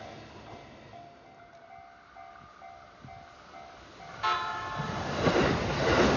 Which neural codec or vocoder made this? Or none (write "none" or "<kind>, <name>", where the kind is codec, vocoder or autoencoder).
none